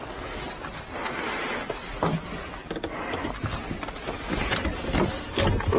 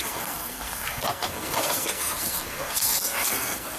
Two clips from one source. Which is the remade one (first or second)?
second